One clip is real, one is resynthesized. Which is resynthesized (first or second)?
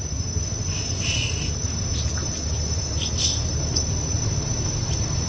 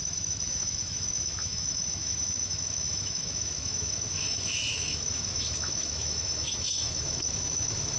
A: second